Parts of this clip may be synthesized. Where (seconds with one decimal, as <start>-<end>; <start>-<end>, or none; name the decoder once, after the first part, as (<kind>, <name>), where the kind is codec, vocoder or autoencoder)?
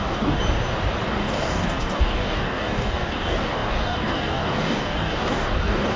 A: 0.0-0.4 (codec, DAC); 1.1-6.0